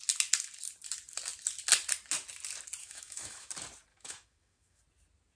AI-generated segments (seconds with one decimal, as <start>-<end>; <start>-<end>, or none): 2.8-3.5; 3.9-4.8